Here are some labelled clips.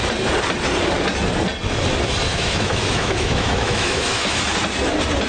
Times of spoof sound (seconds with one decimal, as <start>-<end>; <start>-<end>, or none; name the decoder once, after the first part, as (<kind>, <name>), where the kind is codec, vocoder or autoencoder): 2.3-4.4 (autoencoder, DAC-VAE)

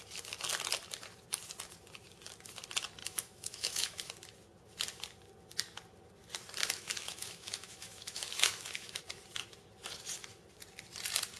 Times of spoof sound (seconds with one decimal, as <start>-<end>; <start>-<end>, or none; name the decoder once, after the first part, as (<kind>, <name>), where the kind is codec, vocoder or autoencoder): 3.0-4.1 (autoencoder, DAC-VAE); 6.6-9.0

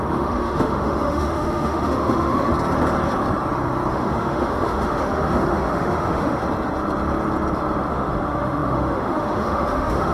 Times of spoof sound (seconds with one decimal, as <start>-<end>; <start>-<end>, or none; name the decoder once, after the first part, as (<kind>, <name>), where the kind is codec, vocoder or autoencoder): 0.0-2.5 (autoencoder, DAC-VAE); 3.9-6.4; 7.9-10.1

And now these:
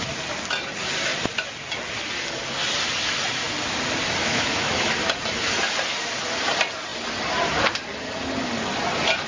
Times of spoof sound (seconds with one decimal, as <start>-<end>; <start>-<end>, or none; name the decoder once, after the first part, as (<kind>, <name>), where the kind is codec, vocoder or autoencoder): 4.2-4.9 (autoencoder, DAC-VAE)